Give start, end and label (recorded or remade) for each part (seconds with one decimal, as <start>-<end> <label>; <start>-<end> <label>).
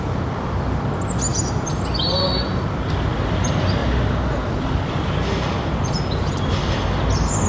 0.0-7.5 recorded